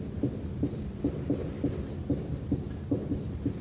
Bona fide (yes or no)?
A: yes